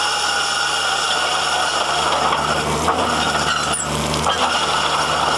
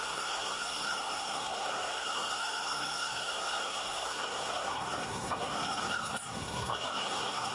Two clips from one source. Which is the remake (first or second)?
second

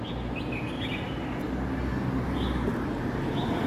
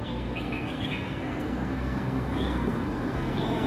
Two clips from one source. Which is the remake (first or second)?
second